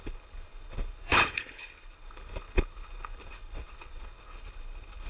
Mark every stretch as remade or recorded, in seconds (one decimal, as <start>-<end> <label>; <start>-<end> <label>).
0.0-5.1 remade